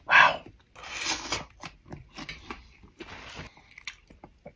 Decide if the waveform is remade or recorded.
recorded